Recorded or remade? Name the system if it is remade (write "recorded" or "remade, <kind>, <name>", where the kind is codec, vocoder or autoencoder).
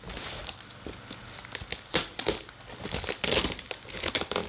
recorded